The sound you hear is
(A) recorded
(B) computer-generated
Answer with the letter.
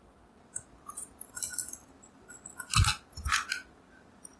A